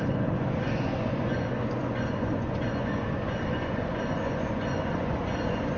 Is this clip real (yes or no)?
no